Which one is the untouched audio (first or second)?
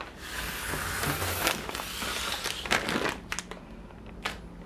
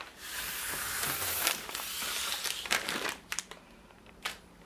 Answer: first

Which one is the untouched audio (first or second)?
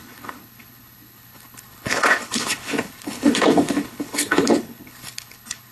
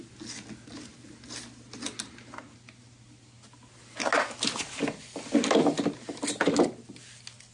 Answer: second